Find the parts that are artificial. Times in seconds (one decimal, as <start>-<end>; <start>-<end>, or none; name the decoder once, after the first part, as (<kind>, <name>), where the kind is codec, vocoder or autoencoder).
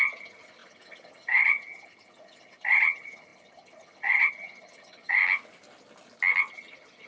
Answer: 0.0-5.2 (vocoder, HiFi-GAN); 6.5-7.1